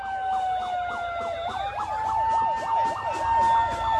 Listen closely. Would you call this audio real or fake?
real